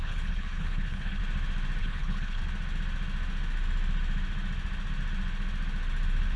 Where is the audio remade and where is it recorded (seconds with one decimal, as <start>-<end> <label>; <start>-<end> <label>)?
0.0-1.2 remade; 1.2-1.8 recorded; 1.8-2.4 remade; 2.4-6.4 recorded